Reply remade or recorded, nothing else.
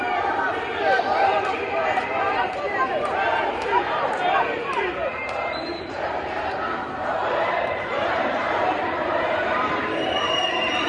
remade